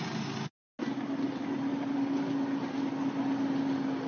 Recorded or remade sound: recorded